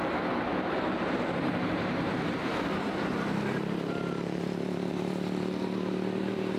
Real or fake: fake